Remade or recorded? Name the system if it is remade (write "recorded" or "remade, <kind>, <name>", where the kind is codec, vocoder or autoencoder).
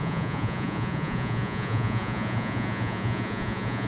remade, vocoder, Vocos